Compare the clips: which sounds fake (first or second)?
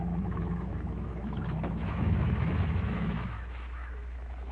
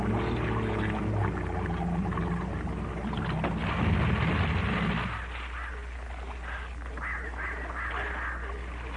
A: first